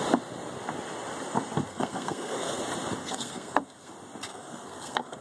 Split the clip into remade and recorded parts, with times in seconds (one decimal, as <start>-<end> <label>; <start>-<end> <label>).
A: 0.0-1.7 recorded; 1.7-2.6 remade; 2.6-3.0 recorded; 3.0-3.9 remade; 3.9-4.3 recorded; 4.3-5.2 remade